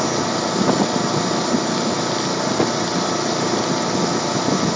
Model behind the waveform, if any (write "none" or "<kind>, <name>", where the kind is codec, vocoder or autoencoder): none